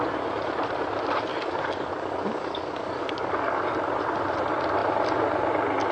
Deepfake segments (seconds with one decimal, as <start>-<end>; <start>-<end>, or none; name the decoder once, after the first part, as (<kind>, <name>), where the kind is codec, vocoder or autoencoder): 1.3-3.6 (codec, DAC)